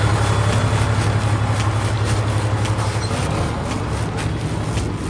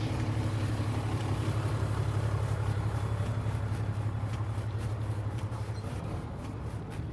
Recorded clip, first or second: first